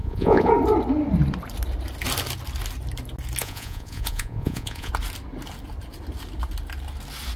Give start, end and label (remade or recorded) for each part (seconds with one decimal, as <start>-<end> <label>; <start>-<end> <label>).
0.0-0.5 remade; 0.5-3.4 recorded; 3.4-4.9 remade; 4.9-7.4 recorded